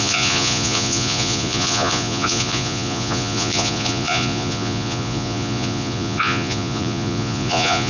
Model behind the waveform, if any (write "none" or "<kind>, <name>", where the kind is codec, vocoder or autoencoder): vocoder, Vocos